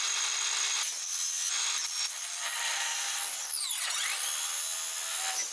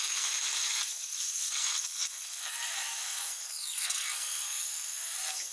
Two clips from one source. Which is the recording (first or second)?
first